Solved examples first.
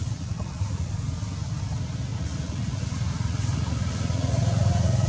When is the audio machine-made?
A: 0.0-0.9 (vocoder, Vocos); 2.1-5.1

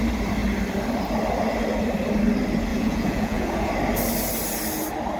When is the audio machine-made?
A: 2.7-3.7 (vocoder, Vocos)

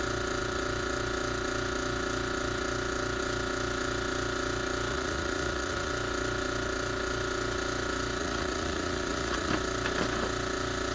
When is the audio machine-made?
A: 4.9-5.9 (vocoder, Vocos); 8.2-9.5